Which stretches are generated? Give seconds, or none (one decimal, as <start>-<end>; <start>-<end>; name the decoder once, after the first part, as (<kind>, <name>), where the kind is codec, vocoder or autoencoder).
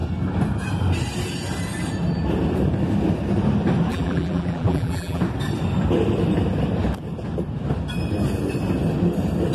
3.9-5.2 (vocoder, BigVGAN v2)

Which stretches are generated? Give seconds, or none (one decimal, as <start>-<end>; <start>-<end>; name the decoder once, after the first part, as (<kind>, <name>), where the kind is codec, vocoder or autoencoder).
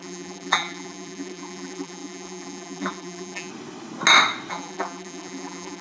0.0-3.5 (vocoder, BigVGAN v2); 4.5-5.8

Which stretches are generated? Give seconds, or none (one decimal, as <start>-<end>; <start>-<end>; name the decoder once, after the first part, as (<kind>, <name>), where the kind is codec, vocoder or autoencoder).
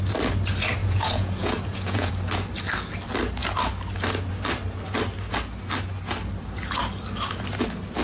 0.8-2.1 (vocoder, Vocos)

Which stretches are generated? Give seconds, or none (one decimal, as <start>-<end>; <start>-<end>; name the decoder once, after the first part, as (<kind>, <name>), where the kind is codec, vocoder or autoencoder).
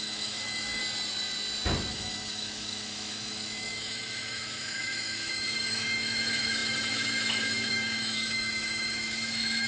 0.0-0.8 (autoencoder, DAC-VAE); 1.9-9.7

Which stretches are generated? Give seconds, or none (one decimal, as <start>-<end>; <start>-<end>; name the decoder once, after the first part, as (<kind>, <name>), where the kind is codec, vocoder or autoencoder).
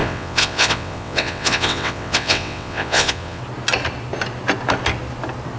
0.0-3.4 (vocoder, WaveNeXt)